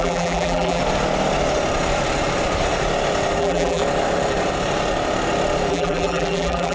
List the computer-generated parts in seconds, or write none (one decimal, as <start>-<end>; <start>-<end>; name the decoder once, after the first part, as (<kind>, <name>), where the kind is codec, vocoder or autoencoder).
0.0-0.8 (vocoder, BigVGAN v2); 3.4-3.8; 5.7-6.7